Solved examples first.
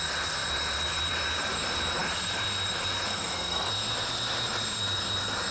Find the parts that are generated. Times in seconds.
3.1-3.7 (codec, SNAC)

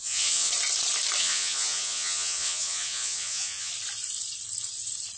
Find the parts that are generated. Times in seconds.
0.0-0.5 (vocoder, Vocos); 1.2-3.7

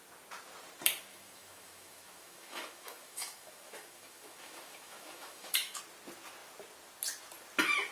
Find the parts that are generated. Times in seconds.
1.1-5.8 (autoencoder, DAC-VAE)

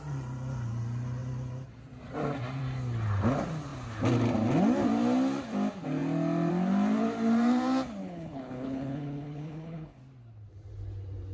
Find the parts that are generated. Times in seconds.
8.0-10.0 (codec, HILCodec)

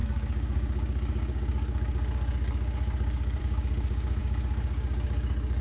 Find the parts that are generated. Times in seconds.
0.0-5.6 (codec, DAC)

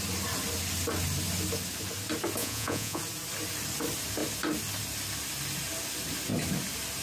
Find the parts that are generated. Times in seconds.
2.4-3.0 (vocoder, Vocos)